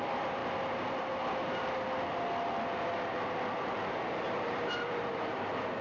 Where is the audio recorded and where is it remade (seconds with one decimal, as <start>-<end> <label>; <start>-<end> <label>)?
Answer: 0.0-0.4 remade; 0.4-3.9 recorded; 3.9-5.8 remade